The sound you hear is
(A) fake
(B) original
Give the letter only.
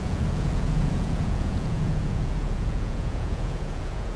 A